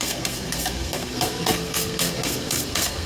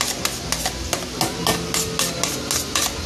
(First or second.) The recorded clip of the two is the second